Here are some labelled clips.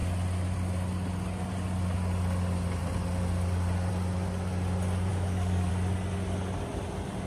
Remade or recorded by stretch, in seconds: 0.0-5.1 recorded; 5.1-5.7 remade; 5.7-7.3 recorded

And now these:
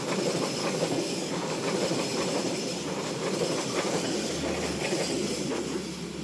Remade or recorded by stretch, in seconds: 0.0-0.6 recorded; 0.6-1.6 remade; 1.6-6.2 recorded

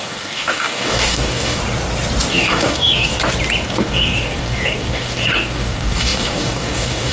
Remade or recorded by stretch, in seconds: 0.0-1.6 remade; 1.6-2.3 recorded; 2.3-3.1 remade; 3.1-3.7 recorded; 3.7-7.1 remade

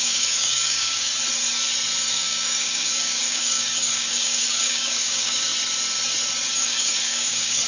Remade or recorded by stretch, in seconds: 0.0-1.1 remade; 1.1-2.1 recorded; 2.1-5.5 remade; 5.5-6.6 recorded; 6.6-7.7 remade

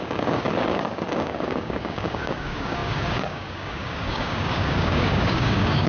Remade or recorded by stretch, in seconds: 0.0-5.9 remade